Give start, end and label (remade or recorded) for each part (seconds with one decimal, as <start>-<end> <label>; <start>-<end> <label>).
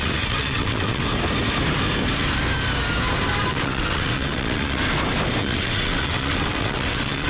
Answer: 0.0-1.0 remade; 1.0-3.5 recorded; 3.5-4.8 remade; 4.8-5.4 recorded; 5.4-7.3 remade